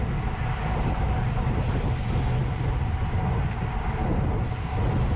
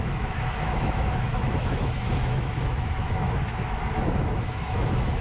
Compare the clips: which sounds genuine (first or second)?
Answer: first